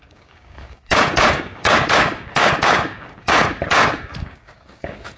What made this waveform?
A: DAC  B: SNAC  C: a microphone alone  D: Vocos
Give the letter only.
A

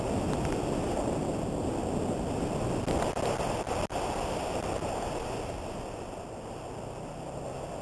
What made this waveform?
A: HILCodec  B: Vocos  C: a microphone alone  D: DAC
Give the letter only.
C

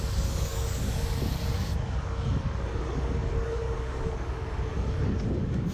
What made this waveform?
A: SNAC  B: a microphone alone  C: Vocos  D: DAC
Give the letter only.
D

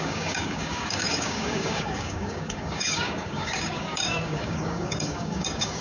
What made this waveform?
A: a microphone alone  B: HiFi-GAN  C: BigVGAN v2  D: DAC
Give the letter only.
D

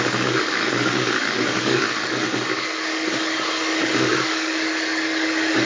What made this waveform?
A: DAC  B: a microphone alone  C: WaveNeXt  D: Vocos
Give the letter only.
A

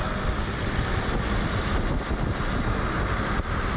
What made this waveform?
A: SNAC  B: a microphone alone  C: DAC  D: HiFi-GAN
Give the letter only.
B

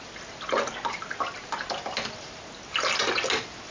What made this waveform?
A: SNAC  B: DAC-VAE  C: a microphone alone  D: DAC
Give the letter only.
C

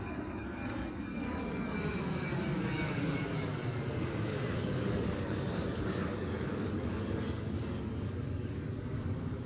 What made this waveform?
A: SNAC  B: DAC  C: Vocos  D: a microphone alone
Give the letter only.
B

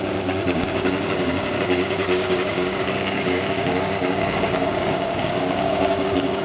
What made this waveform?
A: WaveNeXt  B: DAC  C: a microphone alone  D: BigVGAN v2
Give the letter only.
B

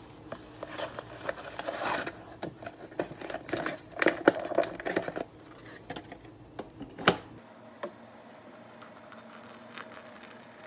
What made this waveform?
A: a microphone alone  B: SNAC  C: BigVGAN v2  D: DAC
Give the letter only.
A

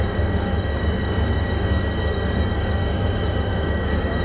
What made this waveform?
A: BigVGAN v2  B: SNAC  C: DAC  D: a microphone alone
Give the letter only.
C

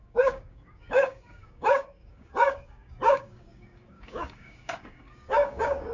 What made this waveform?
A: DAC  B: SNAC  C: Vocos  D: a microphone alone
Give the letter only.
A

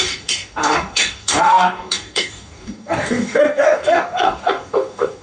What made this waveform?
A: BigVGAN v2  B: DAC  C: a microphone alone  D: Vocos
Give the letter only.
B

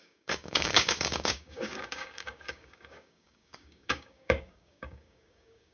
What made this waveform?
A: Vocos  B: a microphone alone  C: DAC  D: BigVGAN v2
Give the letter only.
C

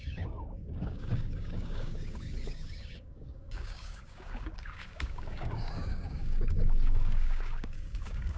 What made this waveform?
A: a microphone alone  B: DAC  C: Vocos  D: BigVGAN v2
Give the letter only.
B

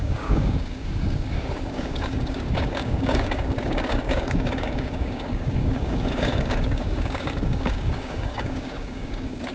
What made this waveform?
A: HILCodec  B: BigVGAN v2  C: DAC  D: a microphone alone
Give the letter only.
C